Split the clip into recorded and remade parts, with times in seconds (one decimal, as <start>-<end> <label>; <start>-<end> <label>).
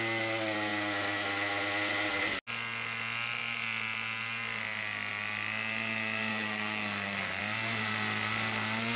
0.0-6.3 recorded; 6.3-7.4 remade; 7.4-9.0 recorded